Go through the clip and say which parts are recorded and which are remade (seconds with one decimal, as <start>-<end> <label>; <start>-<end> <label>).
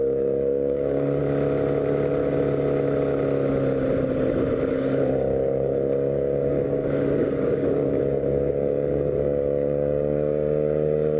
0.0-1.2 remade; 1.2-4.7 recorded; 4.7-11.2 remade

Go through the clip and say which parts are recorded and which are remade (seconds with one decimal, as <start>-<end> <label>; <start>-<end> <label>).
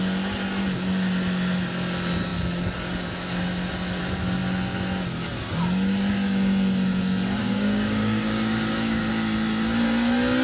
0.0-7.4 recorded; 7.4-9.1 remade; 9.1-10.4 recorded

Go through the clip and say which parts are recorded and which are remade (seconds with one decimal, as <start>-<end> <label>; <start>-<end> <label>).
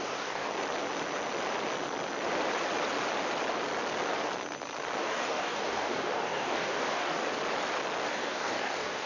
0.0-0.5 remade; 0.5-5.0 recorded; 5.0-7.2 remade; 7.2-8.1 recorded; 8.1-9.1 remade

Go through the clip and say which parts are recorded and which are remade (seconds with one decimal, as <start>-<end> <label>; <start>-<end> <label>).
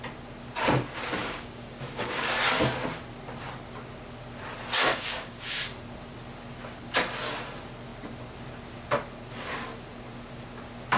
0.0-1.2 recorded; 1.2-2.3 remade; 2.3-4.9 recorded; 4.9-5.6 remade; 5.6-11.0 recorded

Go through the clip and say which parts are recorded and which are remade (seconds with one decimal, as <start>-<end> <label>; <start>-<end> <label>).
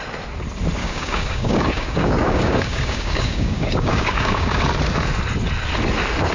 0.0-0.8 recorded; 0.8-4.6 remade; 4.6-6.3 recorded